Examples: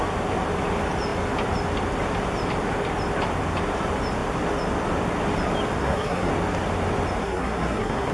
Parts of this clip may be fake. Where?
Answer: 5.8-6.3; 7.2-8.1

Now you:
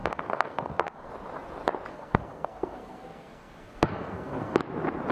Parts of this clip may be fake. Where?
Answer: 0.0-1.1; 1.9-4.6

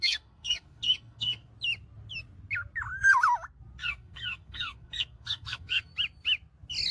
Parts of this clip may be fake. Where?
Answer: 0.0-1.5; 3.8-5.9

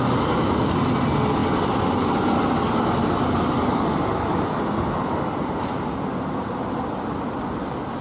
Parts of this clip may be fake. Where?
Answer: none

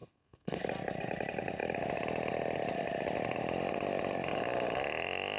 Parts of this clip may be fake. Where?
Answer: 0.0-0.6

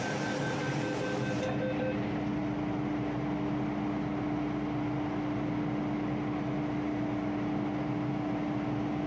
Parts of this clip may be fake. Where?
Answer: none